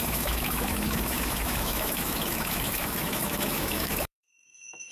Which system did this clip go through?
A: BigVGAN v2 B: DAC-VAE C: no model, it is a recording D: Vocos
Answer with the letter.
B